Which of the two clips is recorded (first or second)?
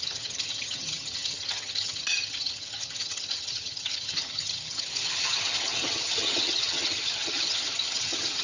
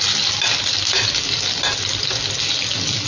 second